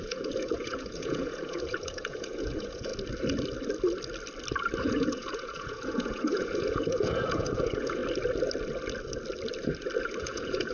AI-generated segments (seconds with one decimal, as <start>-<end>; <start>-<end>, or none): 0.0-2.9; 4.8-8.0; 10.2-10.7